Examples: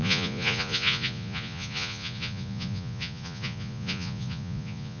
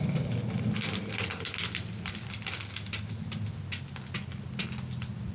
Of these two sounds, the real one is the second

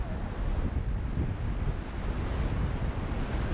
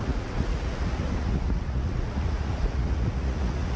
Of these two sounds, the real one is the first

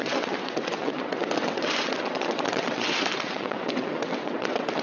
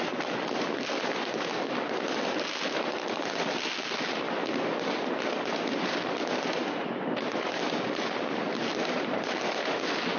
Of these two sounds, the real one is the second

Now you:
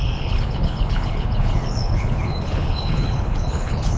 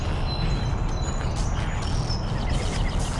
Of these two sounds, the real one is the second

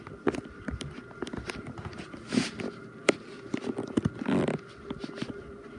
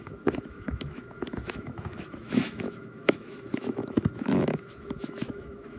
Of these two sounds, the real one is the first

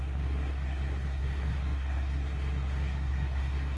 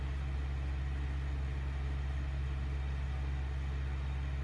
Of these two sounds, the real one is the second